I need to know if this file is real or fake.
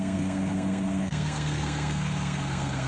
fake